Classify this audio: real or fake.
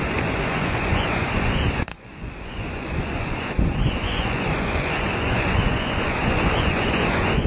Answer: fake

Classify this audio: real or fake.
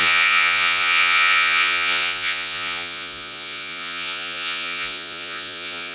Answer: fake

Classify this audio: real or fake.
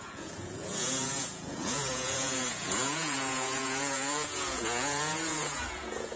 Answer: fake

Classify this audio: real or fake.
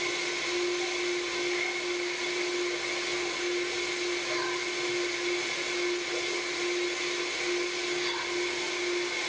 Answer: real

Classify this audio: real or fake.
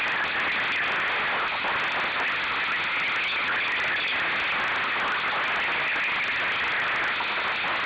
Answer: real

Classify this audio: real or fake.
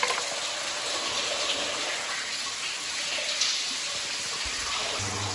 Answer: real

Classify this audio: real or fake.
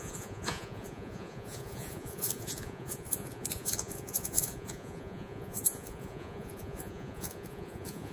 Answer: fake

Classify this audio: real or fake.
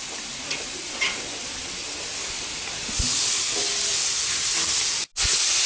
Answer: real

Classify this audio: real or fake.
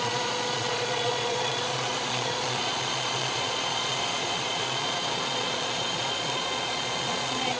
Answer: fake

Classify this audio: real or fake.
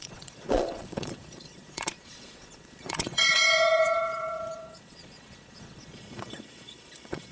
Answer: fake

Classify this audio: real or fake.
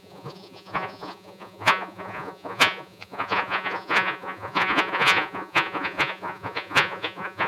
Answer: fake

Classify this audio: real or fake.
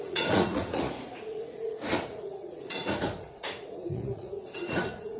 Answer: fake